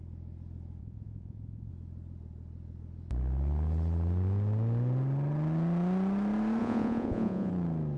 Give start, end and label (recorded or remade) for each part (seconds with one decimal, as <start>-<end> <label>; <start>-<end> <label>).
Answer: 0.0-0.8 recorded; 0.8-1.7 remade; 1.7-6.6 recorded; 6.6-7.5 remade; 7.5-8.0 recorded